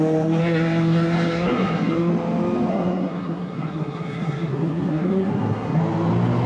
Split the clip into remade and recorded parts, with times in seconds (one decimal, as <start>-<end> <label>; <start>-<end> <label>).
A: 0.0-0.4 recorded; 0.4-2.1 remade; 2.1-2.7 recorded; 2.7-5.8 remade; 5.8-6.5 recorded